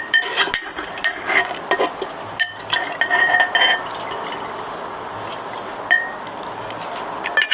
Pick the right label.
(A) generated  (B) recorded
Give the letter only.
B